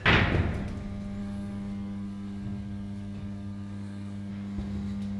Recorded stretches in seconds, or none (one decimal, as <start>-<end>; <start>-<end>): 0.0-1.2; 4.3-5.2